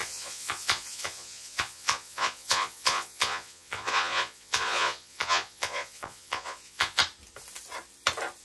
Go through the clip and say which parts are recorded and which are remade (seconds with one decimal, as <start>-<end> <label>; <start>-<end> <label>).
0.0-7.0 remade; 7.0-8.4 recorded